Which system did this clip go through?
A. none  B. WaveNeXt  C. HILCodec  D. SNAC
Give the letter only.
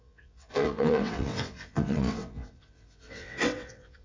B